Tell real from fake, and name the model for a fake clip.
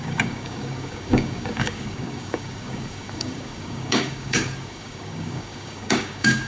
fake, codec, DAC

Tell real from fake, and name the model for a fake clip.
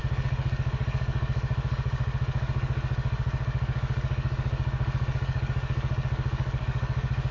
fake, codec, DAC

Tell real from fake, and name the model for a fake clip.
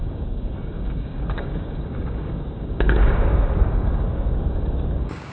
fake, codec, DAC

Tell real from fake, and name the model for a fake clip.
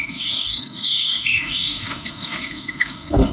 fake, codec, DAC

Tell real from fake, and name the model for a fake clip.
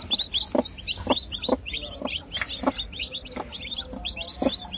real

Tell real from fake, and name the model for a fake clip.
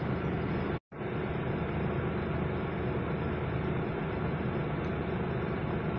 real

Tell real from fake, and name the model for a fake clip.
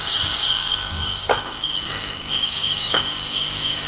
fake, codec, DAC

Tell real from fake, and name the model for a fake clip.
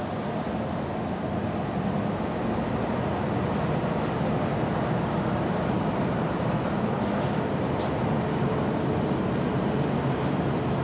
real